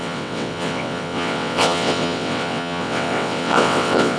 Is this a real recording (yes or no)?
no